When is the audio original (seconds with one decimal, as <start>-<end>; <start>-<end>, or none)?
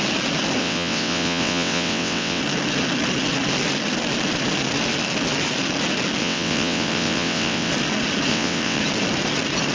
0.0-0.6; 2.4-6.2; 7.7-8.3; 8.8-9.7